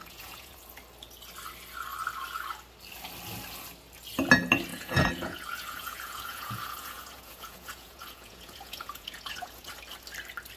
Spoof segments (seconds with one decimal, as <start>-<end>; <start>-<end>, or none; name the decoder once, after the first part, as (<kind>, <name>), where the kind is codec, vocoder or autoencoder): 0.0-0.6 (vocoder, Vocos); 4.7-9.7